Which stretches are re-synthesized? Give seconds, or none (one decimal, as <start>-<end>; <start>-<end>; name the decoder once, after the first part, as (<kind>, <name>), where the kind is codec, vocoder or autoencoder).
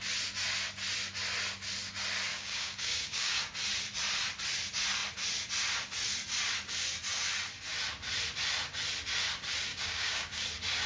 2.3-3.4 (codec, DAC); 9.7-10.4